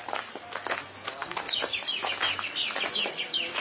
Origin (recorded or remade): remade